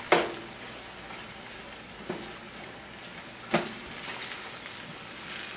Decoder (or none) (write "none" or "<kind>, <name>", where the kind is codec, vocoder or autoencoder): none